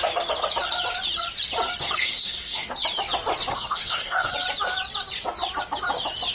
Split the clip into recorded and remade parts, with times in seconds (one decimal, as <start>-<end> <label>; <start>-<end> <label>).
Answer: 0.0-2.0 recorded; 2.0-2.7 remade; 2.7-3.5 recorded; 3.5-4.3 remade; 4.3-6.3 recorded